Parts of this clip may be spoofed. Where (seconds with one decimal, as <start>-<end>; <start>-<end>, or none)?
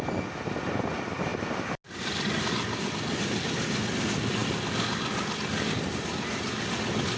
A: none